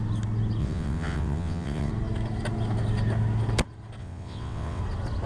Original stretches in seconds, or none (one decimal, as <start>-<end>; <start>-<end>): 0.0-0.6; 1.9-4.0; 4.8-5.3